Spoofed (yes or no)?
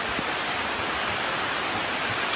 no